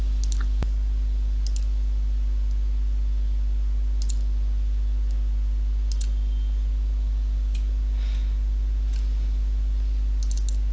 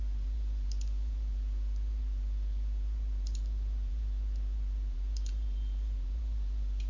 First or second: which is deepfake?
second